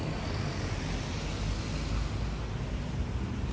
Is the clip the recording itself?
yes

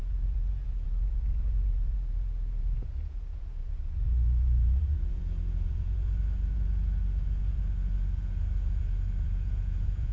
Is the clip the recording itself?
no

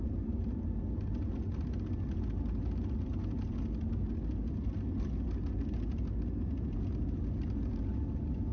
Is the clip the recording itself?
yes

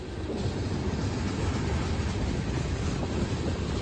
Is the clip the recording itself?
yes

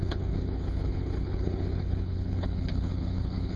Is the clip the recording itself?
no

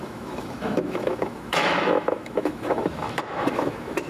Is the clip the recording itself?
no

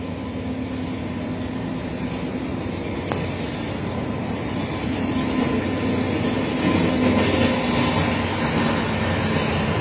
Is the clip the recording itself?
yes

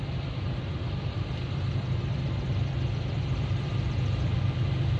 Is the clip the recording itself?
no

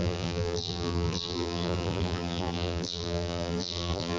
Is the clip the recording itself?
no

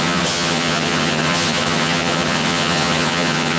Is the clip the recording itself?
no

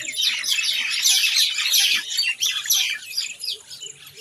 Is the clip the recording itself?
yes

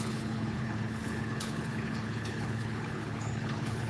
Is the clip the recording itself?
no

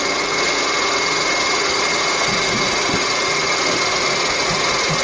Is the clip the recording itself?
no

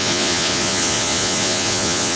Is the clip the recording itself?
no